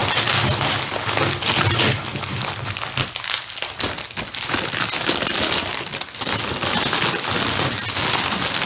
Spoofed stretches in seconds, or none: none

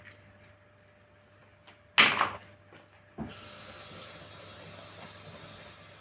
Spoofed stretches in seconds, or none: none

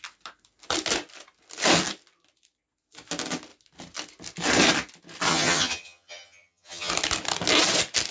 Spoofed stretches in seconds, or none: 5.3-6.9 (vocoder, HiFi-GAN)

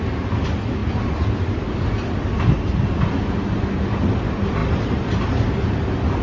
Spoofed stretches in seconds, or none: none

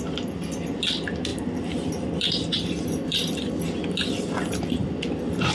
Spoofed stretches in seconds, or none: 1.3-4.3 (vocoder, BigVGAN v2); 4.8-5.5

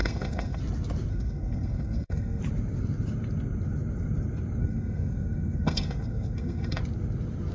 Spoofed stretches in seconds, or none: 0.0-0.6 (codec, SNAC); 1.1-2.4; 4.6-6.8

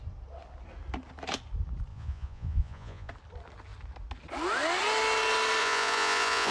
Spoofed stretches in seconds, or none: 1.9-3.1 (vocoder, Vocos); 5.6-6.5